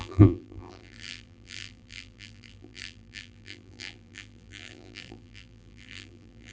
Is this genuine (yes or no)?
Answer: no